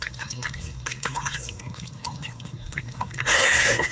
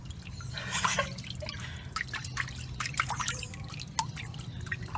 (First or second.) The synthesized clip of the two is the first